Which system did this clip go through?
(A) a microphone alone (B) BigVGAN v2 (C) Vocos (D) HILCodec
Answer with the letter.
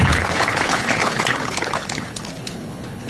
D